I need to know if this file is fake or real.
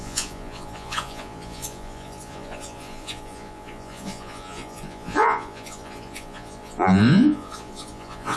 fake